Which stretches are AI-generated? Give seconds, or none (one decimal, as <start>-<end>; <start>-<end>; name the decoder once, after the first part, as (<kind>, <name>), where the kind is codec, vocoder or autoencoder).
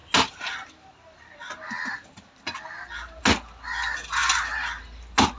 none